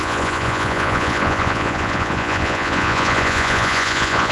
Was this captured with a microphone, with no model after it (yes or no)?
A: no